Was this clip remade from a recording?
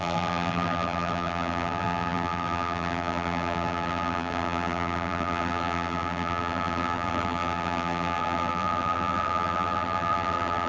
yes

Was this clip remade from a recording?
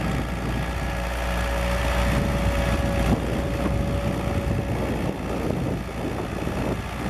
no